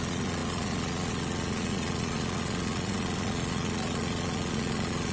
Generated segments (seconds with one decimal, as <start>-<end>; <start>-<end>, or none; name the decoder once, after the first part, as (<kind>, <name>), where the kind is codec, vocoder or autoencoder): 0.0-5.1 (vocoder, Vocos)